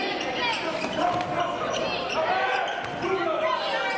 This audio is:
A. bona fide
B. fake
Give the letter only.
A